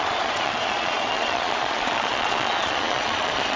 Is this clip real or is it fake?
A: fake